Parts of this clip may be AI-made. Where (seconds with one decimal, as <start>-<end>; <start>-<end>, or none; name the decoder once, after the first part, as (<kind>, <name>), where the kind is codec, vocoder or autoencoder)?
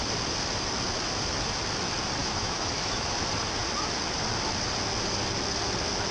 2.2-3.2 (autoencoder, DAC-VAE)